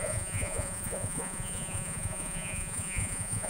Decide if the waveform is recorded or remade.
remade